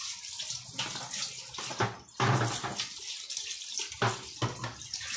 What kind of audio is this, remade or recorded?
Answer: recorded